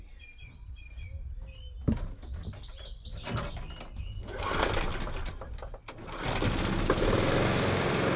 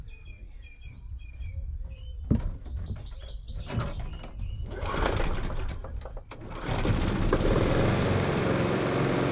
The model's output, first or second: second